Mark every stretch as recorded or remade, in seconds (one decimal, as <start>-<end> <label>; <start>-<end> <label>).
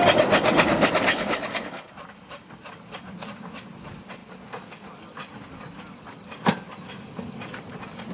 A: 0.0-1.1 recorded; 1.1-1.9 remade; 1.9-8.1 recorded